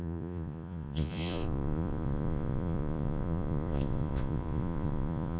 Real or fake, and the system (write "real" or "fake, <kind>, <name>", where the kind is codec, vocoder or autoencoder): fake, vocoder, Vocos